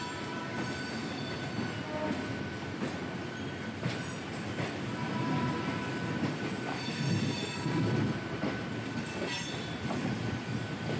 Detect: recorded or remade recorded